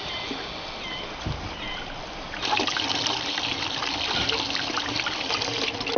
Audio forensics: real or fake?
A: real